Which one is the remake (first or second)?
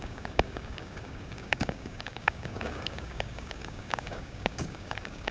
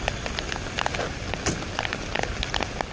first